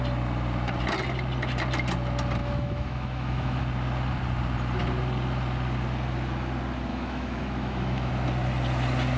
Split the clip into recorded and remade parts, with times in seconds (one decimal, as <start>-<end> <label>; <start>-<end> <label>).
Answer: 0.0-2.4 recorded; 2.4-3.6 remade; 3.6-6.9 recorded; 6.9-8.1 remade; 8.1-9.2 recorded